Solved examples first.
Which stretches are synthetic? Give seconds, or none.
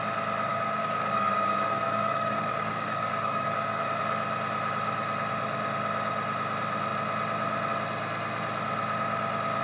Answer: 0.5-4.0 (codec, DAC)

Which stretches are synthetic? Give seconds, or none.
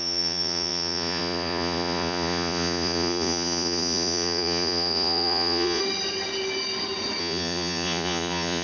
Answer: 0.0-5.8 (vocoder, Vocos); 7.2-8.6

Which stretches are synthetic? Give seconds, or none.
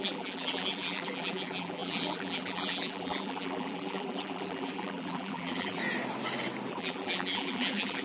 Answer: 0.0-5.8 (vocoder, BigVGAN v2); 6.7-8.0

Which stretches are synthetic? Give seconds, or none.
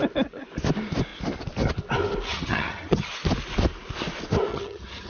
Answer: 2.3-3.1 (vocoder, HiFi-GAN); 4.5-5.1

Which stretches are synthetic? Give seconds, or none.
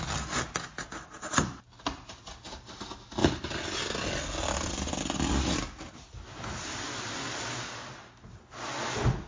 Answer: none